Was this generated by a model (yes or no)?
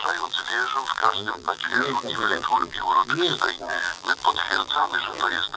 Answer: yes